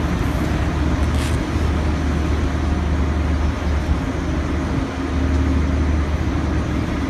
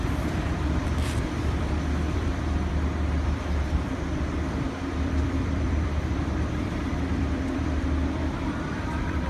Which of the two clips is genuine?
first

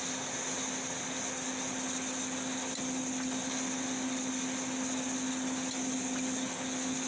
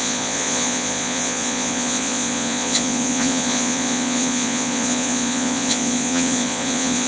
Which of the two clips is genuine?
first